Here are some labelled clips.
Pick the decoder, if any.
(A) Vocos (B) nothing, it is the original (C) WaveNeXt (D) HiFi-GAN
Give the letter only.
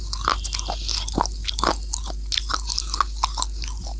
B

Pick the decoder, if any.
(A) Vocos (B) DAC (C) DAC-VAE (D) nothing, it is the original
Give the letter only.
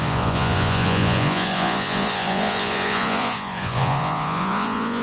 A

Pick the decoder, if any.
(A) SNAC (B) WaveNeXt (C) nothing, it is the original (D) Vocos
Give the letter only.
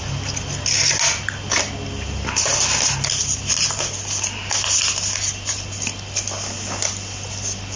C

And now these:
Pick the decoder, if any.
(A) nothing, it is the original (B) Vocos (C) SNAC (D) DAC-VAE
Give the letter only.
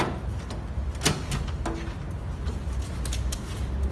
A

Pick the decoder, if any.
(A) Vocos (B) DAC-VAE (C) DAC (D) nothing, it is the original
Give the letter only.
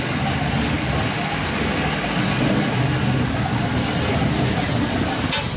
D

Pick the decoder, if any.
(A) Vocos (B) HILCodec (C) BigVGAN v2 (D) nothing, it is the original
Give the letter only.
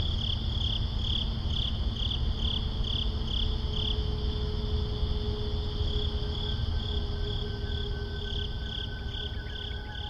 D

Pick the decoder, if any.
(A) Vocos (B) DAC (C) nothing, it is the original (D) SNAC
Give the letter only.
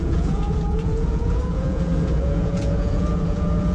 A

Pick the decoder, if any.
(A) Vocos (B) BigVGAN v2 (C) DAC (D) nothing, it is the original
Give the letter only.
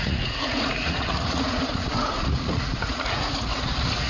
A